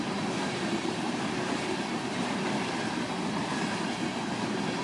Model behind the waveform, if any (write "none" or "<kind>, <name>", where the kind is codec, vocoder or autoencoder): none